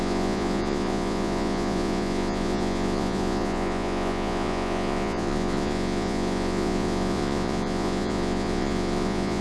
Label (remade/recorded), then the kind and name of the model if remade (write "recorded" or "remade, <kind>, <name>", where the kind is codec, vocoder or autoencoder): remade, vocoder, Vocos